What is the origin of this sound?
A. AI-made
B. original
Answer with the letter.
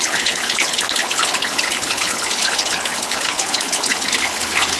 A